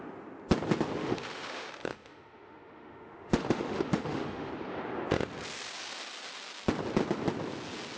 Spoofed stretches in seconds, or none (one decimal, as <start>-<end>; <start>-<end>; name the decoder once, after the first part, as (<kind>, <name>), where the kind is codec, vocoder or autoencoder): 1.0-4.5 (autoencoder, DAC-VAE)